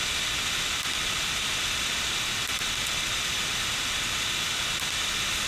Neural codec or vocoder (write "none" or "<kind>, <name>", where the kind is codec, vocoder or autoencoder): none